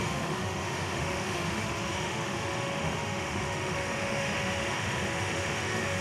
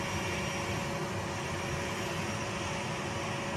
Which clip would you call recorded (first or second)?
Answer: second